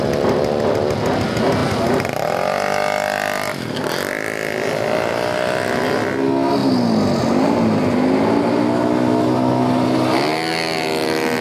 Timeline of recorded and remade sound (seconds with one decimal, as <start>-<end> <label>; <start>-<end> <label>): 0.0-11.4 recorded